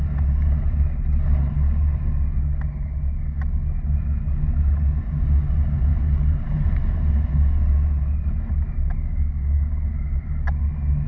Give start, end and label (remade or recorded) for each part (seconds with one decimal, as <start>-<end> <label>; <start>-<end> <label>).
0.0-5.9 recorded; 5.9-7.5 remade; 7.5-11.1 recorded